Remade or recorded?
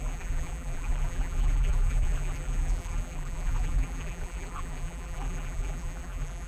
remade